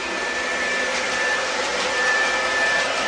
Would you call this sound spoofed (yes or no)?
yes